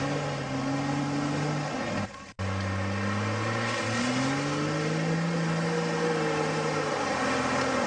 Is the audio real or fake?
real